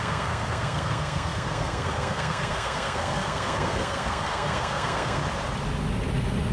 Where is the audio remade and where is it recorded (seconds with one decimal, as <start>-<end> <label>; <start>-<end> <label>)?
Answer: 0.0-5.2 remade; 5.2-6.5 recorded

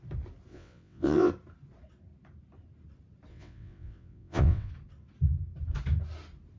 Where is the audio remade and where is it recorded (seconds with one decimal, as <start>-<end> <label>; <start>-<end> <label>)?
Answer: 0.0-0.5 recorded; 0.5-1.3 remade; 1.3-3.3 recorded; 3.3-4.7 remade; 4.7-6.6 recorded

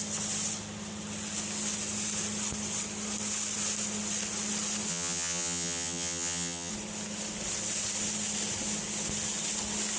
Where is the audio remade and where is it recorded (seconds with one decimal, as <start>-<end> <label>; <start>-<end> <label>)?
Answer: 0.0-4.9 recorded; 4.9-6.7 remade; 6.7-10.0 recorded

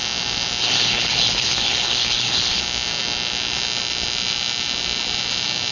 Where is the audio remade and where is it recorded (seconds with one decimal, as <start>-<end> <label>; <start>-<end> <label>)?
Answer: 0.0-0.6 recorded; 0.6-2.6 remade; 2.6-5.7 recorded